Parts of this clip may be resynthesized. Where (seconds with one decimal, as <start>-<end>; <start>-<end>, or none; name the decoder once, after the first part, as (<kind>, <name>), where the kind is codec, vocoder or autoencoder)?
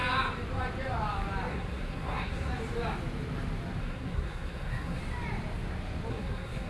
1.5-2.5 (codec, SNAC); 3.8-5.0; 6.1-6.7